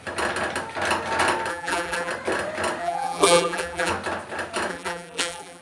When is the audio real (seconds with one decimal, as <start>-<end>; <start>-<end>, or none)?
0.0-1.5; 2.1-2.8; 3.9-4.7